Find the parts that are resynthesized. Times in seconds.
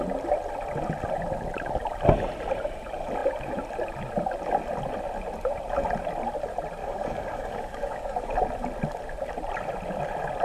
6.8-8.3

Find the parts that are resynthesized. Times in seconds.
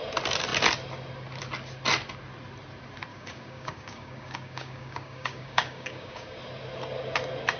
3.1-6.4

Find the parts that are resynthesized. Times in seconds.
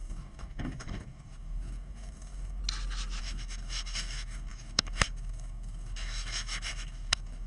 0.0-2.6; 3.2-7.5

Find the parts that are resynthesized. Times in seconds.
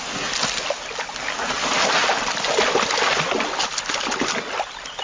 none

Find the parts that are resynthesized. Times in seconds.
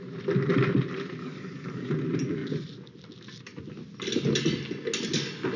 1.2-1.9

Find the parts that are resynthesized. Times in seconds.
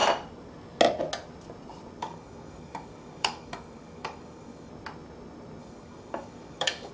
2.0-4.7; 5.6-6.9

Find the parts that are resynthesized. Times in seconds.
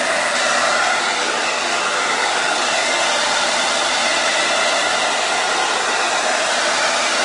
1.2-1.8; 2.2-3.0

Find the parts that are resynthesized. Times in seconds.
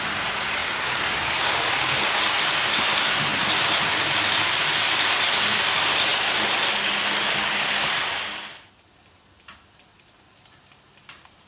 0.6-2.2